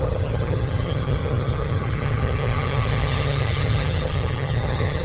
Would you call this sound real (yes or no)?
no